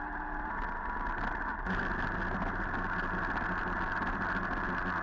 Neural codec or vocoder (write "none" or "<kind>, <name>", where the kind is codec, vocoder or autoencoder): none